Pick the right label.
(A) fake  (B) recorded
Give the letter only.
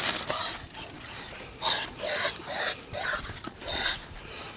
B